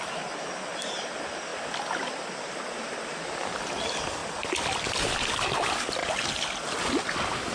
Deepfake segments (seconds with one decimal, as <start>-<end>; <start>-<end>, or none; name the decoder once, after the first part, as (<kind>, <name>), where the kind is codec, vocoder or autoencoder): none